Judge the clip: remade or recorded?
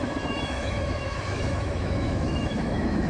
remade